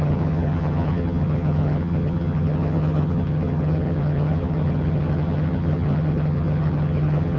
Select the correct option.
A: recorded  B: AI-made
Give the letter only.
B